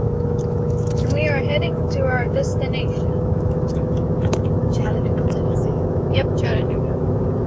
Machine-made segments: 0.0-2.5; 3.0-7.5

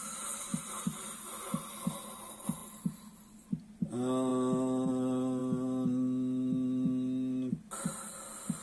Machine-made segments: none

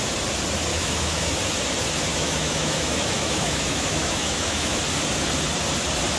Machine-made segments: 0.7-1.3; 2.1-4.8

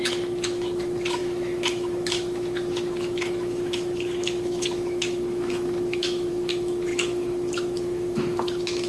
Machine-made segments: 0.0-8.9

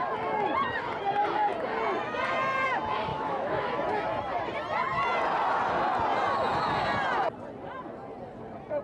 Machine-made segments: 3.1-3.7

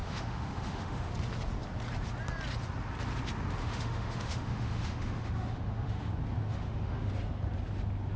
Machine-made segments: 0.0-1.1; 3.6-6.1; 6.5-7.1

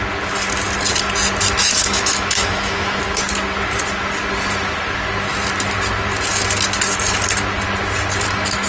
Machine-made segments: 1.6-3.0

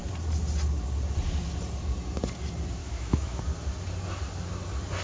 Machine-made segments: 2.8-3.4